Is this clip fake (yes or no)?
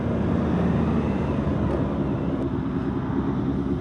no